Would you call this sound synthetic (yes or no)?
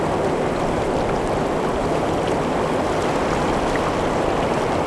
no